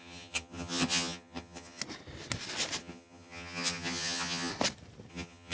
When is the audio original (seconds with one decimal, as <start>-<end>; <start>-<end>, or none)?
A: 1.8-2.8; 4.5-5.1